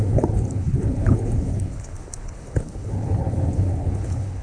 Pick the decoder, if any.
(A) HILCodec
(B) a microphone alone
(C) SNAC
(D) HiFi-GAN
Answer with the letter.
A